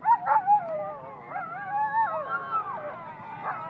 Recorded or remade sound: recorded